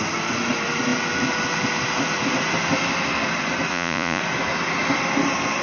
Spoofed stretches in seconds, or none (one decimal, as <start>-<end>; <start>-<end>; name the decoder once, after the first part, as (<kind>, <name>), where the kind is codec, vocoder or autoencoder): 3.7-4.2 (vocoder, Vocos)